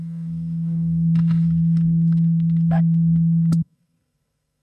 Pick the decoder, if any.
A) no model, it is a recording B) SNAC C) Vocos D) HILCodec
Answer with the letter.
B